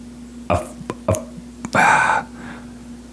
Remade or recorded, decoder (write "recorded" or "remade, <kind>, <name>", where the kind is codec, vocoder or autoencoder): recorded